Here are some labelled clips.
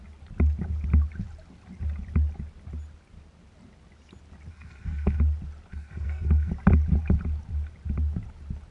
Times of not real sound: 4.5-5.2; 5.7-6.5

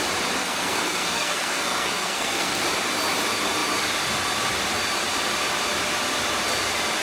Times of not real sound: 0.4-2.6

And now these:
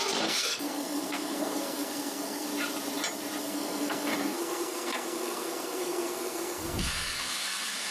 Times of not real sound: 0.0-2.5; 3.4-7.9

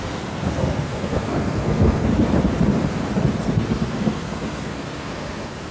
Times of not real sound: 0.0-2.1; 3.4-5.7

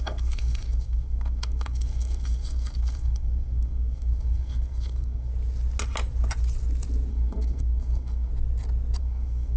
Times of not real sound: 0.0-5.3; 7.1-8.3; 9.0-9.6

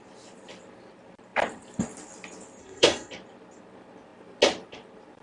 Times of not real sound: 2.6-3.1